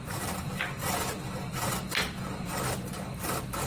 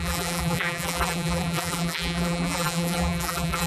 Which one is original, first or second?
first